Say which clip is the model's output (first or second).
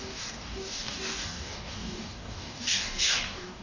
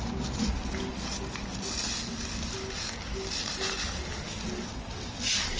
first